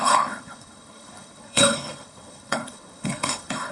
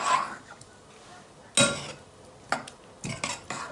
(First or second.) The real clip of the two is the second